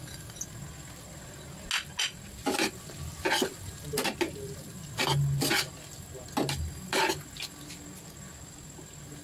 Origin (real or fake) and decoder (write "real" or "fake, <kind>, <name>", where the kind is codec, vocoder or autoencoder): real